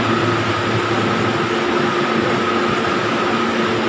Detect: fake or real real